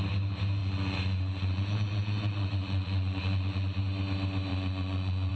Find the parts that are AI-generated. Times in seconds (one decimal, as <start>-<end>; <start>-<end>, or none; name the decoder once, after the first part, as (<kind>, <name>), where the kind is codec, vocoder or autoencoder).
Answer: 0.6-3.8 (vocoder, Vocos); 4.5-5.3